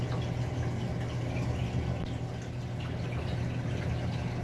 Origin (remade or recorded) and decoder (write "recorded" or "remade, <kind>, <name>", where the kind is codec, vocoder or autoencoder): recorded